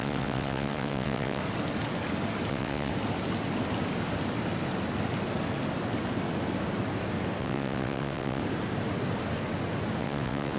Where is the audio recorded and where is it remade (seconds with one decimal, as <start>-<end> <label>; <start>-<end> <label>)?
0.0-1.4 remade; 1.4-2.5 recorded; 2.5-2.9 remade; 2.9-7.4 recorded; 7.4-8.4 remade; 8.4-10.0 recorded; 10.0-10.6 remade